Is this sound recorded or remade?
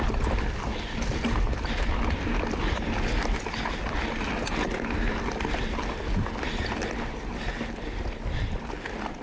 recorded